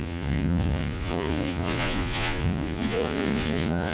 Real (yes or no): no